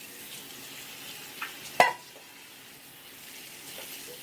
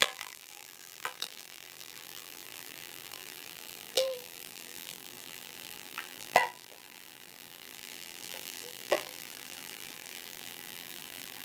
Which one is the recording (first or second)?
first